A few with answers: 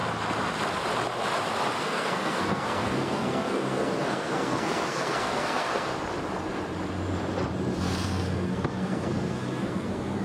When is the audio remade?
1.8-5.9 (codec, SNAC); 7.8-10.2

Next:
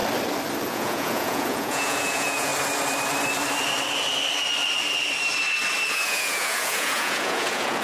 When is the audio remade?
0.7-2.5 (vocoder, Vocos); 5.9-7.8

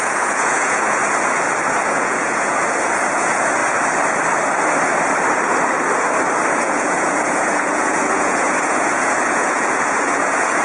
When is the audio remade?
0.0-1.0 (vocoder, Vocos); 1.8-3.6; 6.5-10.6

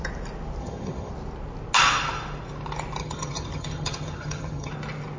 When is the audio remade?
0.6-1.1 (vocoder, HiFi-GAN); 3.0-4.7

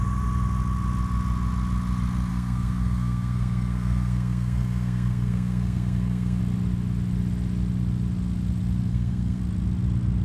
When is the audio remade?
2.3-6.4 (codec, SNAC); 8.9-9.4